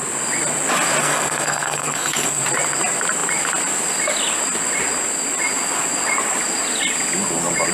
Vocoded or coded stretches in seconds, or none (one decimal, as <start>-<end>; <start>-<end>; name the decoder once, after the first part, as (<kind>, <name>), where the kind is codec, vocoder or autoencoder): 1.0-2.4 (codec, SNAC)